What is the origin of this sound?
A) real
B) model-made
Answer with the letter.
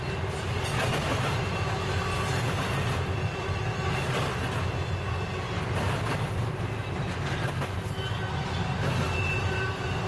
A